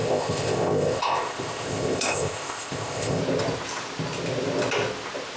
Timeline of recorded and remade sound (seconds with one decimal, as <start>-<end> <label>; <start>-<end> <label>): 0.0-3.2 remade; 3.2-5.4 recorded